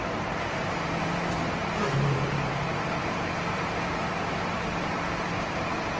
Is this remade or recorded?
remade